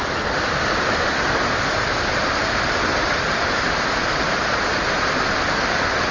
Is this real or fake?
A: real